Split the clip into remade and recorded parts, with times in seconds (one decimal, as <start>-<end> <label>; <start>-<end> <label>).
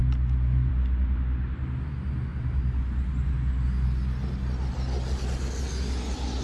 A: 0.0-6.4 recorded